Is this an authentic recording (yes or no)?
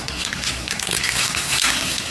no